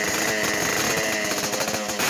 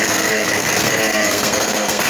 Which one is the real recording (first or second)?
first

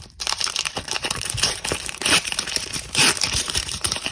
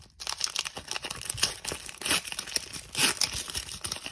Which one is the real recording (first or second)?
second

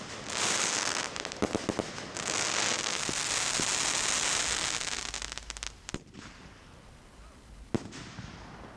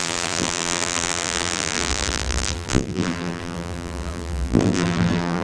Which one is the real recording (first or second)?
first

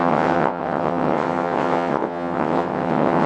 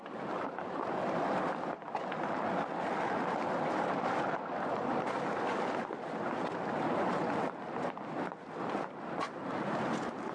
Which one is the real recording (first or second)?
second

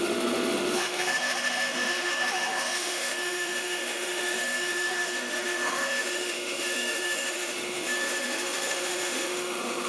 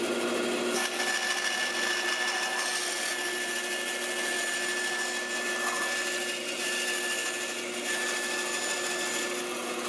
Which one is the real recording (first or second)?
second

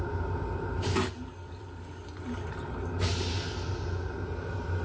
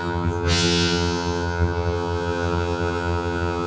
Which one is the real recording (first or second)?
first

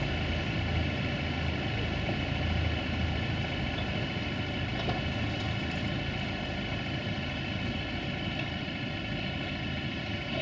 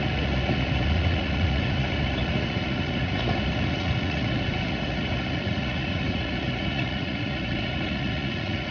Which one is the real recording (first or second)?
first